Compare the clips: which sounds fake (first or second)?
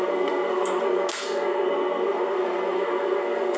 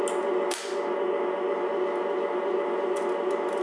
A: first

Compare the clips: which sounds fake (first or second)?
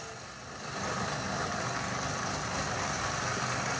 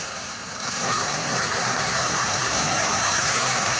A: second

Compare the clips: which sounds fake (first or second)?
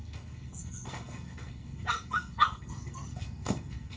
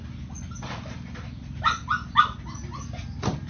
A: first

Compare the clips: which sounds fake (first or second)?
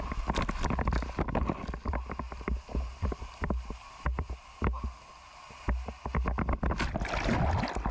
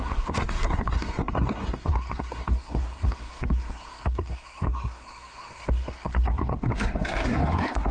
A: second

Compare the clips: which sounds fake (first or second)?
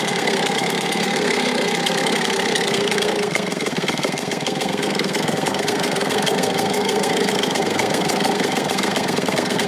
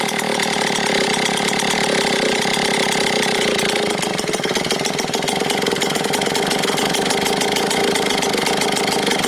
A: first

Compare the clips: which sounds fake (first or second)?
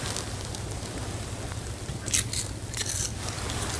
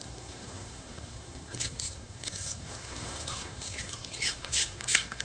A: second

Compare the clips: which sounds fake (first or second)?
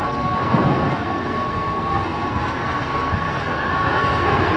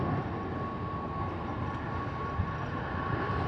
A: first